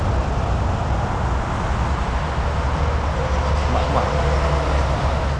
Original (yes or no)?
yes